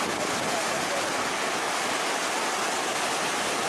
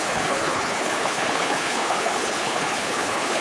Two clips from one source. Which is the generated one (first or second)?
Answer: second